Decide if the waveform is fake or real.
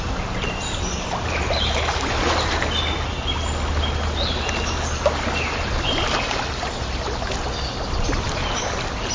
real